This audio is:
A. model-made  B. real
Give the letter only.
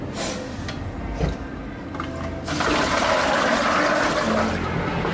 B